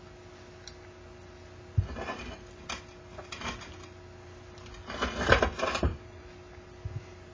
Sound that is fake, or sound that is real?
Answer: real